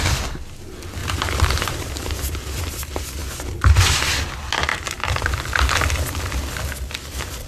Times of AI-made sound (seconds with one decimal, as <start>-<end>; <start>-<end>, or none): 1.0-2.6; 4.7-5.2